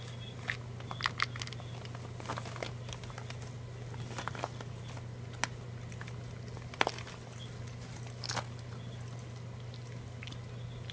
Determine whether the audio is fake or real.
real